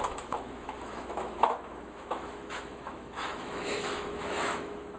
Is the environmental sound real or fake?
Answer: fake